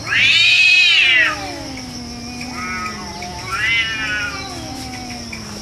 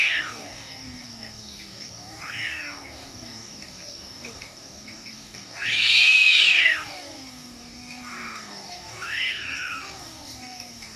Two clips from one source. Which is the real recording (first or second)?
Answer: first